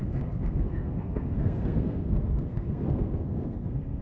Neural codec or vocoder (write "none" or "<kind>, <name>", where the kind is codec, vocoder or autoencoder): codec, SNAC